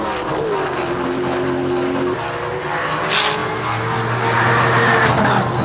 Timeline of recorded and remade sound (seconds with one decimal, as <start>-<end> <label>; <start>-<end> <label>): 0.0-5.6 recorded